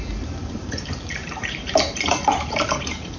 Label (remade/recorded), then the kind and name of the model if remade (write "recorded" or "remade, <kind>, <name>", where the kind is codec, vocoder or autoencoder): remade, vocoder, BigVGAN v2